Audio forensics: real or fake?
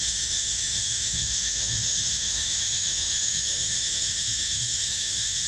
fake